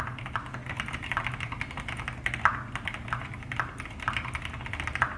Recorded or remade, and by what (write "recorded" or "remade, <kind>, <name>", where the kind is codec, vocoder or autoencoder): recorded